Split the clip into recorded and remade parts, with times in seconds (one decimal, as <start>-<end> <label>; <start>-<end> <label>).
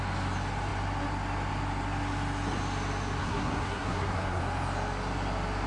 0.0-3.2 recorded; 3.2-4.4 remade; 4.4-5.7 recorded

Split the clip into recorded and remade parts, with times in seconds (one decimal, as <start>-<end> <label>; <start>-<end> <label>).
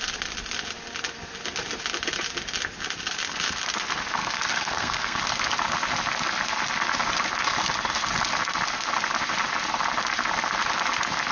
0.0-4.2 recorded; 4.2-5.2 remade; 5.2-11.3 recorded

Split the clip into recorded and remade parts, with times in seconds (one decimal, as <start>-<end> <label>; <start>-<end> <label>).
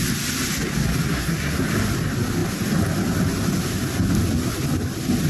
0.0-1.1 recorded; 1.1-1.6 remade; 1.6-5.3 recorded